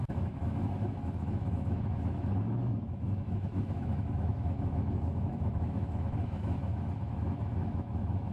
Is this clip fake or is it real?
fake